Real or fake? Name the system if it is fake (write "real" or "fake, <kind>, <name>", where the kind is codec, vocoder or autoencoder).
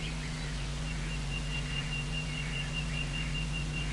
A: fake, vocoder, Vocos